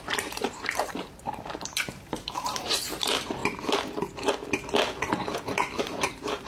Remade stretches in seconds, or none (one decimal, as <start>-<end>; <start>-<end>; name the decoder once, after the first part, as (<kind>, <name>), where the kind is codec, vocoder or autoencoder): 0.0-3.4 (vocoder, BigVGAN v2); 5.8-6.5